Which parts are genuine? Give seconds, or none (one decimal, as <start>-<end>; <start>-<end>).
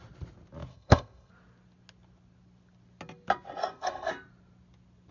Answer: 0.0-0.7; 1.3-3.6; 4.1-5.1